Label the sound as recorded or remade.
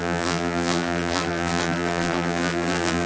remade